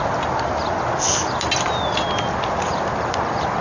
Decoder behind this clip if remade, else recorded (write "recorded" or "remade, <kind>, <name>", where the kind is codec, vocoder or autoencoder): recorded